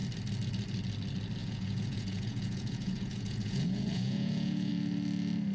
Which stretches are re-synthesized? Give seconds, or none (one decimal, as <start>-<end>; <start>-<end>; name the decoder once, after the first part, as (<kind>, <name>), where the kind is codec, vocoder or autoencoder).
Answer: 1.4-4.7 (vocoder, Vocos)